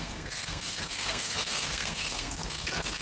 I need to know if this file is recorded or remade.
remade